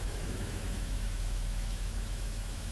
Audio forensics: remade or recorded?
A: remade